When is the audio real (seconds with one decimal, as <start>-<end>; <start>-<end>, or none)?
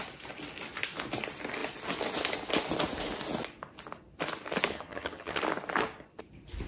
0.0-4.7; 5.4-6.7